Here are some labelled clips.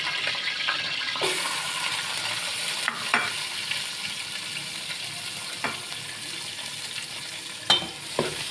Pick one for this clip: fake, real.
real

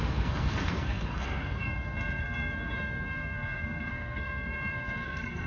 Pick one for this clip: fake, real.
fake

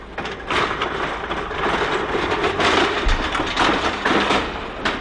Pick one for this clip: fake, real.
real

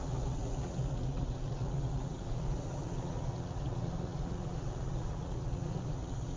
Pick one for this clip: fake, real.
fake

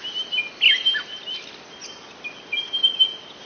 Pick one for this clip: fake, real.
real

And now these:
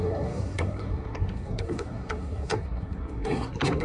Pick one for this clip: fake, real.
fake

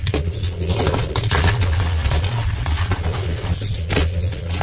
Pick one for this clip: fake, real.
fake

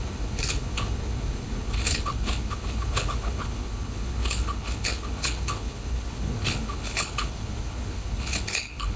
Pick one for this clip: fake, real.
fake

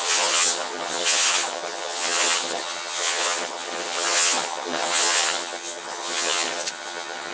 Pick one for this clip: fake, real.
fake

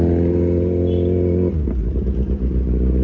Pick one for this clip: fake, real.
real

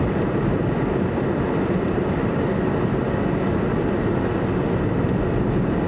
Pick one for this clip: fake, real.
real